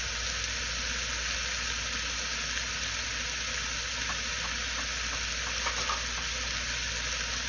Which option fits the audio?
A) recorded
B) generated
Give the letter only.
A